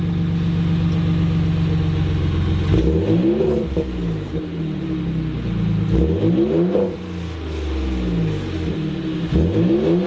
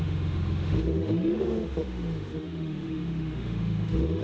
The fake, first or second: second